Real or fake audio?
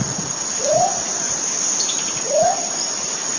real